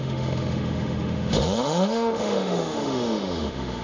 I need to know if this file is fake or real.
fake